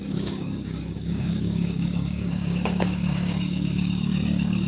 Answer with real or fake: fake